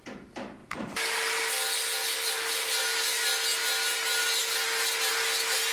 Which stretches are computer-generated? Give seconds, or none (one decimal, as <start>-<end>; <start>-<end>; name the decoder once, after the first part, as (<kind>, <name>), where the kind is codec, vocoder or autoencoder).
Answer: 0.6-1.4 (vocoder, BigVGAN v2)